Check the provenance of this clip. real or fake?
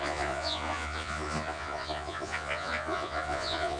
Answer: fake